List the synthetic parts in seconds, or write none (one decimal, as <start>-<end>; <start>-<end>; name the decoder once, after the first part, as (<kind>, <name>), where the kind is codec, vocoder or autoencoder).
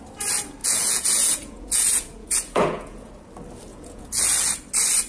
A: 0.6-3.1 (vocoder, Vocos); 3.7-4.2